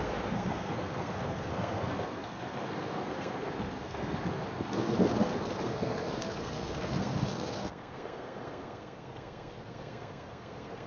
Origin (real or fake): fake